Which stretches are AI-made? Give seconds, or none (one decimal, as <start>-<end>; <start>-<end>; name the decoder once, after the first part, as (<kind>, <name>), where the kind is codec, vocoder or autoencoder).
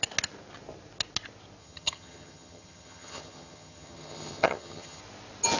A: 1.6-5.0 (vocoder, HiFi-GAN)